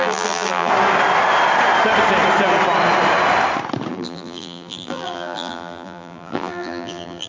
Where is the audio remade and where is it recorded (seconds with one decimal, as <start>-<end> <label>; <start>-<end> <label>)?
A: 0.0-0.7 remade; 0.7-3.9 recorded; 3.9-7.3 remade